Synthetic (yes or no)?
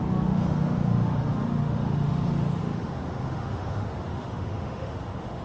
yes